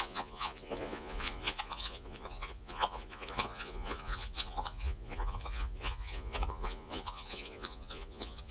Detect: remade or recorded remade